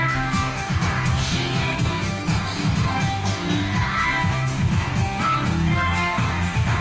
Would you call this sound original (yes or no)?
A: no